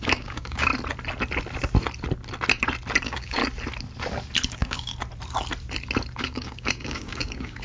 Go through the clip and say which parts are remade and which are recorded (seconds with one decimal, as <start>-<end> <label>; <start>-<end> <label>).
0.0-0.7 remade; 0.7-3.0 recorded; 3.0-3.4 remade; 3.4-4.5 recorded; 4.5-4.9 remade; 4.9-6.2 recorded; 6.2-7.6 remade